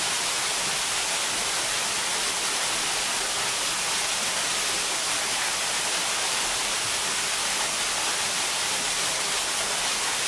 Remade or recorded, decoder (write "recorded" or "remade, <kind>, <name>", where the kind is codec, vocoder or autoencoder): recorded